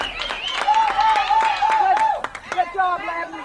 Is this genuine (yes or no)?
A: yes